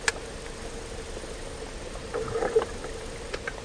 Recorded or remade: recorded